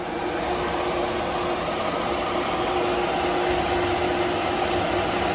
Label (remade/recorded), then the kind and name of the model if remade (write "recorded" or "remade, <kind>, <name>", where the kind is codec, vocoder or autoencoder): recorded